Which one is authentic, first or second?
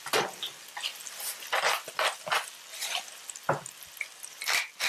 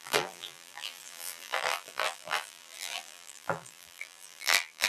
first